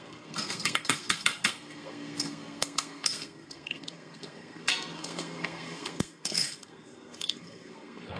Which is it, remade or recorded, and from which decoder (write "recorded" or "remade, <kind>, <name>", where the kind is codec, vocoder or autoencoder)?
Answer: remade, codec, SNAC